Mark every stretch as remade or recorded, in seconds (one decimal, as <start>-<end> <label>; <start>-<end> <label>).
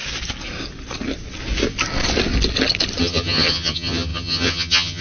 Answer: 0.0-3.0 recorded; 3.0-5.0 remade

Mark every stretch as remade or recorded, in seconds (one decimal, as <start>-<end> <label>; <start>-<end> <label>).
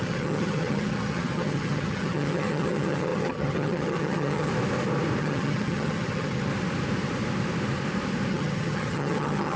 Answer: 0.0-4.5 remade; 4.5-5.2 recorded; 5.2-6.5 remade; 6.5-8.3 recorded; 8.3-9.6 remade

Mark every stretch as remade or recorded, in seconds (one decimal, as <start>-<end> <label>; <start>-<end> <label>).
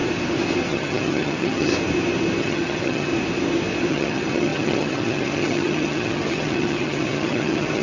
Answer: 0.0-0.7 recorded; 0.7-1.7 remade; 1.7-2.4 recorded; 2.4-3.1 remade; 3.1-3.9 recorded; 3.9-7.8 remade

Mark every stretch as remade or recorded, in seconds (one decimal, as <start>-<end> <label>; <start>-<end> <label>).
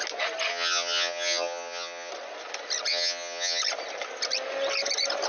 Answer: 0.0-0.5 recorded; 0.5-2.1 remade; 2.1-2.9 recorded; 2.9-3.6 remade; 3.6-5.3 recorded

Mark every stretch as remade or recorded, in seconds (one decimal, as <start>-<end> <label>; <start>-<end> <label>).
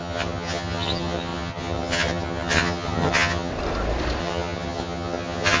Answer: 0.0-3.5 remade; 3.5-4.2 recorded; 4.2-5.6 remade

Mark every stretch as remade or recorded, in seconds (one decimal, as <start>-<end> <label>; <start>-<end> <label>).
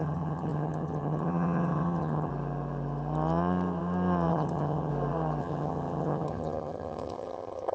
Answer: 0.0-2.3 remade; 2.3-4.3 recorded; 4.3-4.9 remade; 4.9-5.4 recorded; 5.4-7.7 remade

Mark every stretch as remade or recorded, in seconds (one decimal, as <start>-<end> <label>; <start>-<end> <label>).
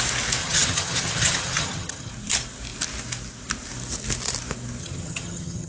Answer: 0.0-0.4 recorded; 0.4-2.1 remade; 2.1-4.8 recorded; 4.8-5.7 remade